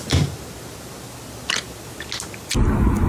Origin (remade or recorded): recorded